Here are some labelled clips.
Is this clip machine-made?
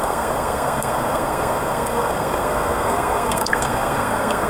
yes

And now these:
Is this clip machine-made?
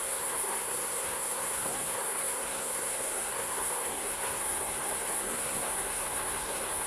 yes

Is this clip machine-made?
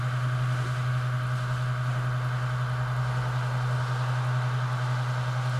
no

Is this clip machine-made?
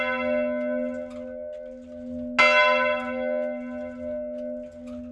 no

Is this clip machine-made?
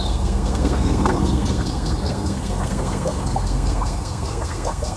yes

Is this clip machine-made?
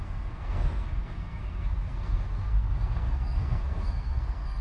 yes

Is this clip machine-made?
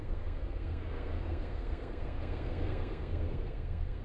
yes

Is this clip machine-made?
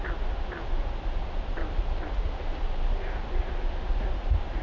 no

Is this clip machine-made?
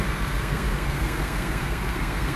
yes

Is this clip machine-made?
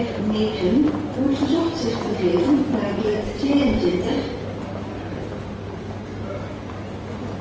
no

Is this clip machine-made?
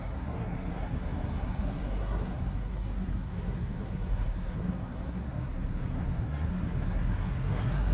yes